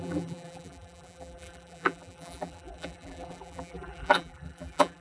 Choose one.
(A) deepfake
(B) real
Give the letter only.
A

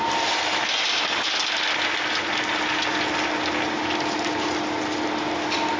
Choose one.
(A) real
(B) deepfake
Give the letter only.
A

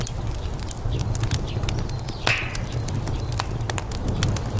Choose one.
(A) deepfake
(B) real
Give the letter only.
B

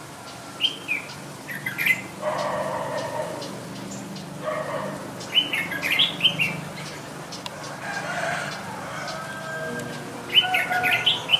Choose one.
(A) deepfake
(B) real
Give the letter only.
B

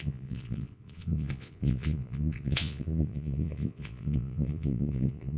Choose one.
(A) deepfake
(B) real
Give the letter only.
A